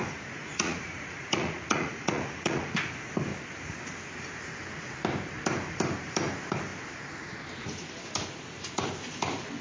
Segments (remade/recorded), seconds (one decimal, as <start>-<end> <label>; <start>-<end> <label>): 0.0-2.7 remade; 2.7-9.6 recorded